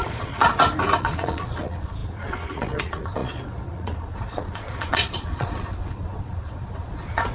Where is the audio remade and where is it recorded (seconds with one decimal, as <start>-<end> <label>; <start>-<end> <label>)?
0.0-0.5 remade; 0.5-1.0 recorded; 1.0-7.3 remade